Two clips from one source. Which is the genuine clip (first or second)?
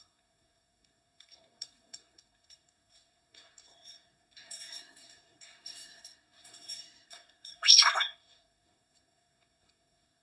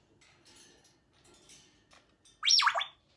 second